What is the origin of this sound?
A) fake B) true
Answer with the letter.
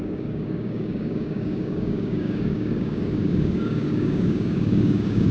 A